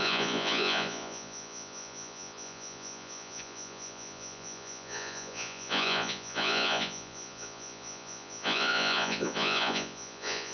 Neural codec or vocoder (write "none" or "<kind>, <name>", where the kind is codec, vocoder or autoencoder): vocoder, Vocos